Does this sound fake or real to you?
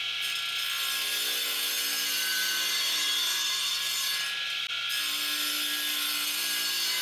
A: real